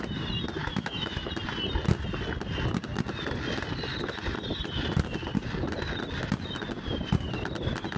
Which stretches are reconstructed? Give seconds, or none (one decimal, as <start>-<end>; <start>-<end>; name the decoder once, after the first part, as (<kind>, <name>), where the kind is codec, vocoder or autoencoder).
0.6-1.3 (autoencoder, DAC-VAE)